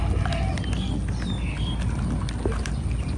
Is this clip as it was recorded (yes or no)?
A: yes